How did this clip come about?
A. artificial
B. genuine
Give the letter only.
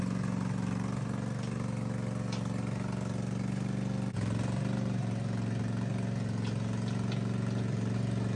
B